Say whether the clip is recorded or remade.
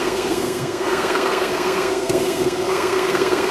remade